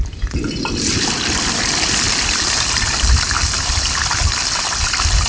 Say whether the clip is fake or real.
real